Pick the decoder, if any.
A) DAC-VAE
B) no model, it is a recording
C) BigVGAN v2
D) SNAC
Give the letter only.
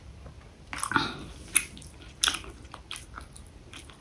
B